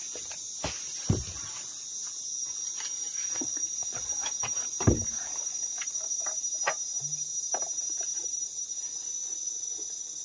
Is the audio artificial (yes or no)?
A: no